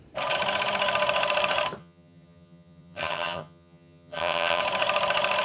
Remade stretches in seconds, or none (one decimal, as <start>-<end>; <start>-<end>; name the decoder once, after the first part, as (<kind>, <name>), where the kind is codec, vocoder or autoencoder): 1.8-4.6 (vocoder, HiFi-GAN)